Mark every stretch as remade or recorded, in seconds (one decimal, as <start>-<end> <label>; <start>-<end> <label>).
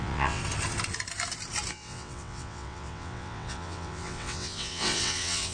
0.0-0.4 remade; 0.4-1.7 recorded; 1.7-5.5 remade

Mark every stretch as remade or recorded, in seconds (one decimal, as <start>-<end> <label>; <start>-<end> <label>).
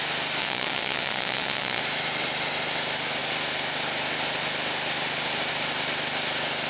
0.0-0.4 recorded; 0.4-1.8 remade; 1.8-6.7 recorded